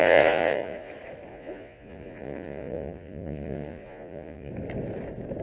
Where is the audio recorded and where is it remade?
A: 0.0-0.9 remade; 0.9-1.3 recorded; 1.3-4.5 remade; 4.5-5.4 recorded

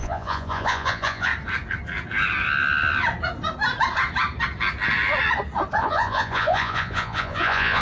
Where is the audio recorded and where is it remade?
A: 0.0-1.3 remade; 1.3-5.8 recorded; 5.8-7.8 remade

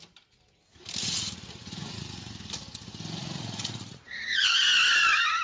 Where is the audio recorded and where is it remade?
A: 0.0-1.0 recorded; 1.0-2.3 remade; 2.3-3.2 recorded; 3.2-4.2 remade; 4.2-5.4 recorded

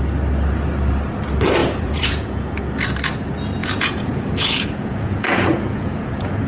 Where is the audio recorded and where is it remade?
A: 0.0-1.6 recorded; 1.6-2.6 remade; 2.6-3.6 recorded; 3.6-6.5 remade

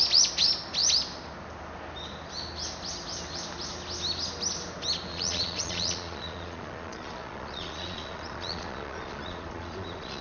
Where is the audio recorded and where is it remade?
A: 0.0-5.1 recorded; 5.1-10.2 remade

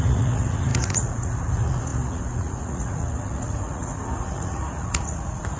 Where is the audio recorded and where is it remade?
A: 0.0-5.6 remade

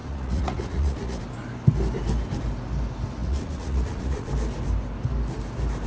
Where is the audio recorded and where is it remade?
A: 0.0-1.2 remade; 1.2-3.2 recorded; 3.2-4.3 remade; 4.3-5.9 recorded

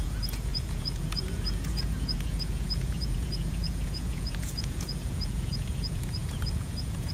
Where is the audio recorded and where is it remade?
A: 0.0-7.1 remade